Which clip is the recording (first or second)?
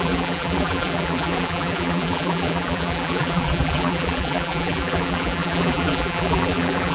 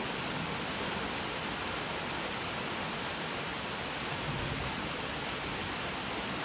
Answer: second